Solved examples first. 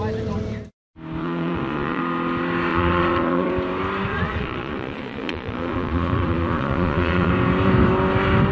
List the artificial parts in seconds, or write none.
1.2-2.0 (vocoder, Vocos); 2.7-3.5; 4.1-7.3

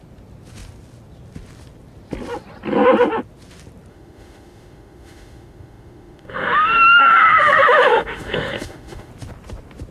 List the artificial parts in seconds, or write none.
3.9-9.1 (autoencoder, DAC-VAE)

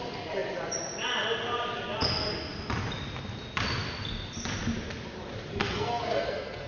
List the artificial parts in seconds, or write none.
5.6-6.7 (codec, SNAC)

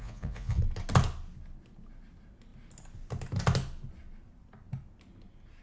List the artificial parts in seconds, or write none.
0.0-0.6 (vocoder, Vocos)

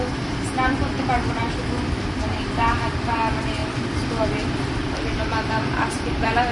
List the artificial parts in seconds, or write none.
0.0-1.4 (vocoder, BigVGAN v2); 2.3-3.6; 4.3-6.5